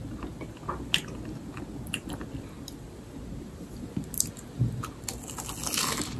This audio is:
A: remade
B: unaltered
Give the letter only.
B